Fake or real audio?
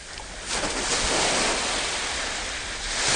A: real